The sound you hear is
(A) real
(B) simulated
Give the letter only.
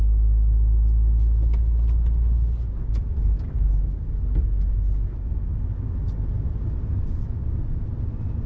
A